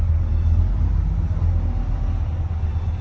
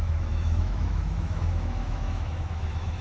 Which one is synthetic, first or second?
second